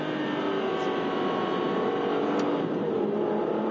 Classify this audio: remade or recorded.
recorded